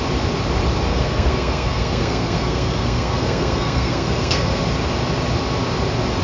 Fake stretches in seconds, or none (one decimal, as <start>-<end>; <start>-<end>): 0.9-4.6